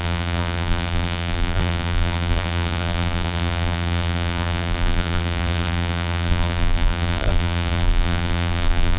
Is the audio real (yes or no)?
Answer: no